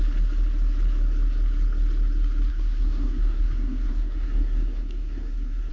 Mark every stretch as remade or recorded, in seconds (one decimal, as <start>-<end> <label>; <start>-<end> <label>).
0.0-2.5 recorded; 2.5-5.7 remade